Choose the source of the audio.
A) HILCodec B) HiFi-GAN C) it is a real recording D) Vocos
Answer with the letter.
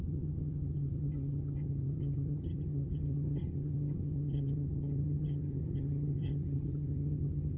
B